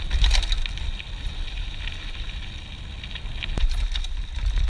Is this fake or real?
real